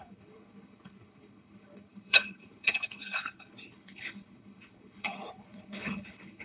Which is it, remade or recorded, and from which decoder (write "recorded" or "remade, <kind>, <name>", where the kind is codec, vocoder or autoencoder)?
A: remade, codec, HILCodec